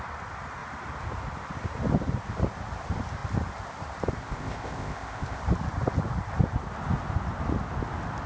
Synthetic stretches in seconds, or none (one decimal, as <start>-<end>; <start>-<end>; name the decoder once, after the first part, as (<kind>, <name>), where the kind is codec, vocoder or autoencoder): 4.2-5.4 (codec, ZipCodec)